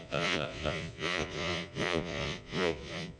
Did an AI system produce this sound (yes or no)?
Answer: yes